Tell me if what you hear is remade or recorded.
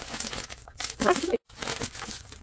remade